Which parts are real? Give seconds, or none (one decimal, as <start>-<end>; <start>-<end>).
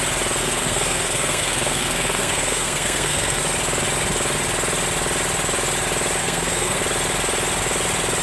0.0-0.4; 3.4-6.2; 6.8-8.2